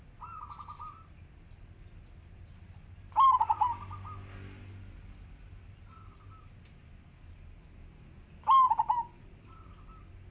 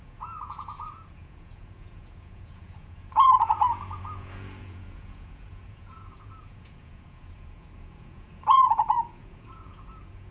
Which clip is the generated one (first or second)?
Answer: second